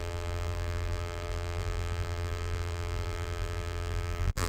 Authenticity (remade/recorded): remade